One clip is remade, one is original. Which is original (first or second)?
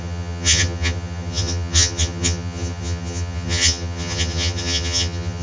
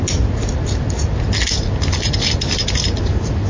second